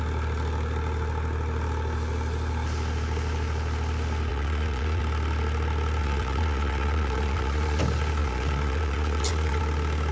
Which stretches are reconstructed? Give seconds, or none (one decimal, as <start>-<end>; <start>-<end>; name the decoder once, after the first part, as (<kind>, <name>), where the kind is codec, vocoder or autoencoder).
4.3-5.0 (vocoder, Vocos); 6.0-7.8; 8.2-9.6